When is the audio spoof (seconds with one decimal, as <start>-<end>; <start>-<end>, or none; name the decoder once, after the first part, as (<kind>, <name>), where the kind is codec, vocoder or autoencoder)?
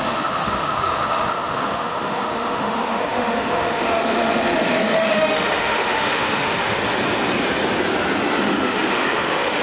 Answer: 0.0-6.8 (autoencoder, DAC-VAE); 8.4-9.6